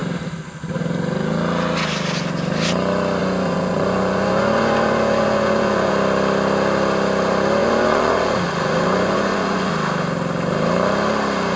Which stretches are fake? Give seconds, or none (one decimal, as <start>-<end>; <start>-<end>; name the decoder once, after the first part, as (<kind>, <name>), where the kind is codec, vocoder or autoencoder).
3.2-5.9 (vocoder, Vocos); 7.6-9.7

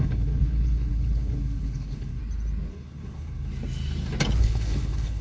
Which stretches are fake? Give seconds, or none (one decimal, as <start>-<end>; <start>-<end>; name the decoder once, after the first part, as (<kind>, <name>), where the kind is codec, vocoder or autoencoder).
0.0-2.2 (codec, HILCodec); 2.7-3.5; 4.4-5.2

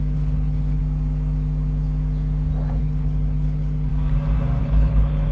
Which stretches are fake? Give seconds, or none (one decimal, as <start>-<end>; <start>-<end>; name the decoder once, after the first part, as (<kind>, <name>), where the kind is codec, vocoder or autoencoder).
0.0-0.8 (codec, HILCodec); 2.8-3.9; 4.6-5.3

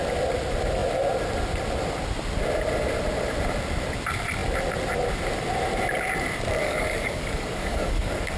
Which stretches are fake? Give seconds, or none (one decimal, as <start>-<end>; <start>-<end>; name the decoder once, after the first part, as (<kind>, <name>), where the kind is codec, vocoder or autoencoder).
6.6-8.4 (codec, DAC)